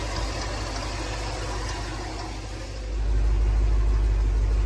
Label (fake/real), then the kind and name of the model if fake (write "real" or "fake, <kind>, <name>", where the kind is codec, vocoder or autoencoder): real